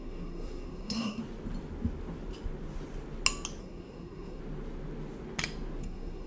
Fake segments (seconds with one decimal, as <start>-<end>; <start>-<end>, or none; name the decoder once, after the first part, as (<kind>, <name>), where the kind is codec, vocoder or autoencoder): 0.0-1.2 (codec, SNAC); 3.6-4.4; 5.8-6.3